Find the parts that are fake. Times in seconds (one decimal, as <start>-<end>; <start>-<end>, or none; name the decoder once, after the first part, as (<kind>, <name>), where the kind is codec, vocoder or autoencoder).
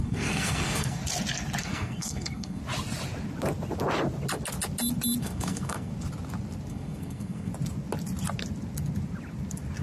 0.0-1.0 (codec, SNAC); 1.6-2.6; 5.2-5.9; 6.7-7.5